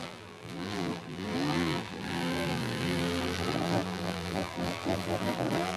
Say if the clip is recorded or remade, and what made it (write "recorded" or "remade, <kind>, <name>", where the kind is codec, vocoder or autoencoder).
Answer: remade, vocoder, BigVGAN v2